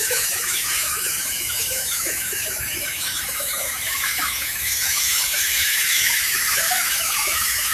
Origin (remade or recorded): remade